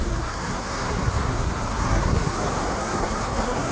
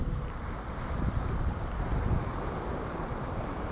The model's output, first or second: first